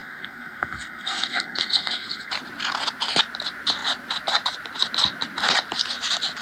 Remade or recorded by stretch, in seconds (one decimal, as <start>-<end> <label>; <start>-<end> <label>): 0.0-2.3 remade; 2.3-6.4 recorded